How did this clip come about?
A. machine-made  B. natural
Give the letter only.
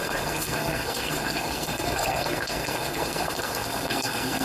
A